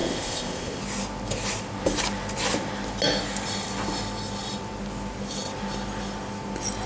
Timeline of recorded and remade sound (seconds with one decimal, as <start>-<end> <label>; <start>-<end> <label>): 0.0-0.8 remade; 0.8-6.9 recorded